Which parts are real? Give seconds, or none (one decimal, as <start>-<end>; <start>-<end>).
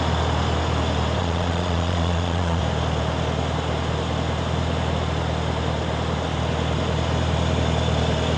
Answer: 0.0-1.2; 2.6-8.4